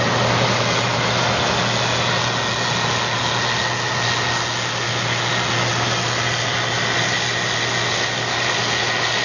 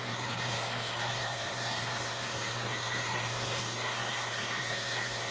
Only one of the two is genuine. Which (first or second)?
first